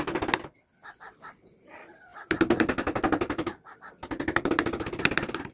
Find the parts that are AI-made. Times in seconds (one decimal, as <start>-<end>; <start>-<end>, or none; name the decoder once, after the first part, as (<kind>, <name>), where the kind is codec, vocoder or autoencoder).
none